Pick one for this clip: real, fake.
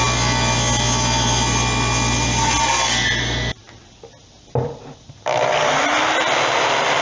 real